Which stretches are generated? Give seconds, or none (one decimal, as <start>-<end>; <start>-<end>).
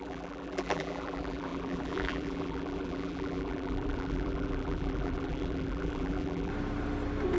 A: 0.0-6.5